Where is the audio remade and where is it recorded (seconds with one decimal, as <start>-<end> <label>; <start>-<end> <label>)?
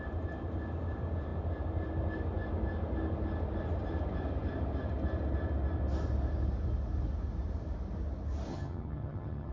0.0-8.5 recorded; 8.5-9.5 remade